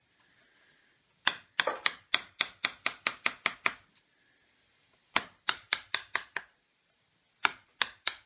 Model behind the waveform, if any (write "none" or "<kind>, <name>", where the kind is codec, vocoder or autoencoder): none